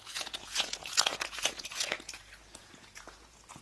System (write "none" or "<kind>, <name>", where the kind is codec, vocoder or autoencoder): vocoder, Vocos